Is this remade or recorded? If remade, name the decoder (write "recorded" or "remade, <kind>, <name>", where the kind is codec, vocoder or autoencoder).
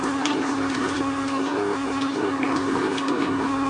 remade, codec, SNAC